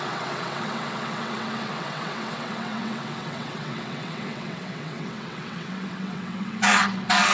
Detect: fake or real fake